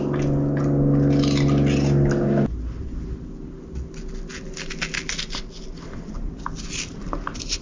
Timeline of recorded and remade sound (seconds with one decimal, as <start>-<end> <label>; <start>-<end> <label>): 0.0-7.6 recorded